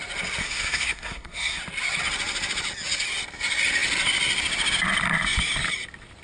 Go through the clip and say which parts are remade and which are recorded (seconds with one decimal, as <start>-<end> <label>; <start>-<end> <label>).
0.0-0.4 recorded; 0.4-1.6 remade; 1.6-6.2 recorded